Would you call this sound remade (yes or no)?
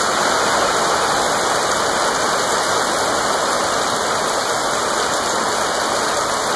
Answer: no